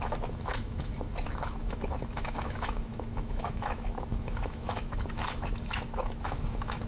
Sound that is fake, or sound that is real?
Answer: fake